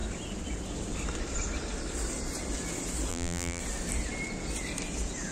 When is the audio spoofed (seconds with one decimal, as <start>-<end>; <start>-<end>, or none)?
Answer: 3.1-3.6